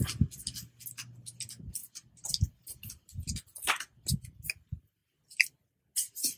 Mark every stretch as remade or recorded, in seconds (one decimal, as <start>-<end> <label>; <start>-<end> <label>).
0.0-6.4 recorded